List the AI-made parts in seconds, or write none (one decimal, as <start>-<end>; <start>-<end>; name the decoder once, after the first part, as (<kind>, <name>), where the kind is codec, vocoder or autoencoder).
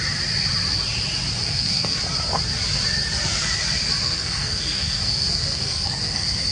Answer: 1.4-2.0 (codec, SNAC); 4.0-6.5